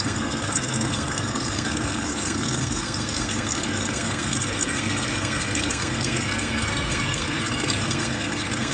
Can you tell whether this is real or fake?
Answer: fake